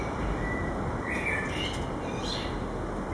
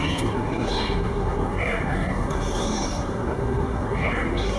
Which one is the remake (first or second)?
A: second